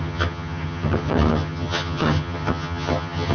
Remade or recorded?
remade